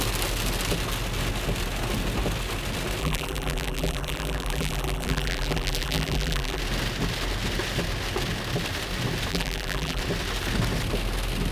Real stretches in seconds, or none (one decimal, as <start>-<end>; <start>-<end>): 0.0-3.0; 6.6-9.3; 10.0-11.5